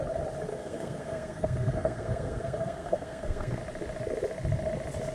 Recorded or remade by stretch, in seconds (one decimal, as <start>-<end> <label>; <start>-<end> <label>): 0.0-0.5 recorded; 0.5-3.6 remade; 3.6-5.1 recorded